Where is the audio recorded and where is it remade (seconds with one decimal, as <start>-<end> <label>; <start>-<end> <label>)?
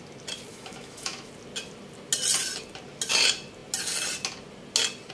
0.0-0.5 recorded; 0.5-1.3 remade; 1.3-5.1 recorded